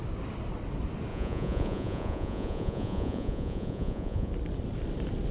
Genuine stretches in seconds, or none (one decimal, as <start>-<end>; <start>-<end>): 0.0-1.1; 4.3-5.3